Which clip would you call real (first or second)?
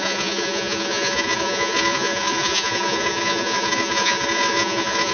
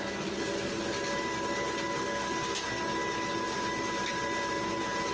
second